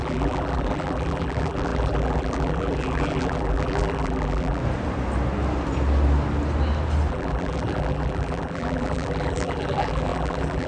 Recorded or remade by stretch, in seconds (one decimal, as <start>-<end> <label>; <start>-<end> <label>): 0.0-4.6 remade; 4.6-7.1 recorded; 7.1-10.7 remade